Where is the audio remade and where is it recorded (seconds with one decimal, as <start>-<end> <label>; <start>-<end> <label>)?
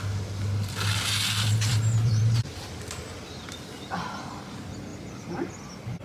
0.0-1.7 recorded; 1.7-2.7 remade; 2.7-6.0 recorded